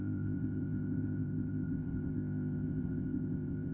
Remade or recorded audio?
remade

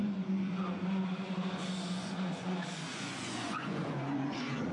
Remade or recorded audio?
remade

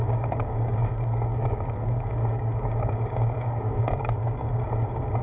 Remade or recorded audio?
remade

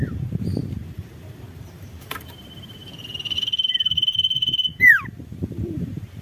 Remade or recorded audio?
remade